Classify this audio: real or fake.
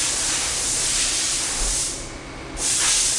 real